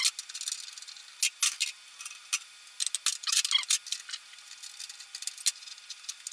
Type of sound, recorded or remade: recorded